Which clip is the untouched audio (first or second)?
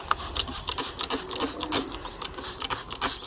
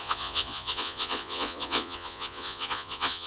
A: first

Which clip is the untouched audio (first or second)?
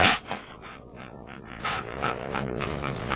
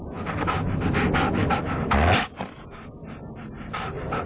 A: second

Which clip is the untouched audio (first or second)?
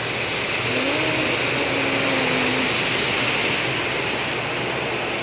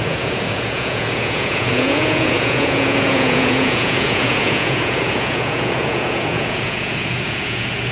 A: first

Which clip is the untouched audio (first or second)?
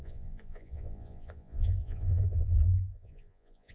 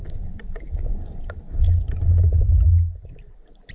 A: second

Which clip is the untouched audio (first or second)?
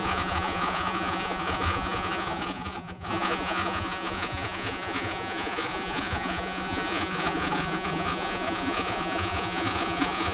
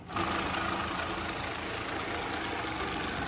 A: second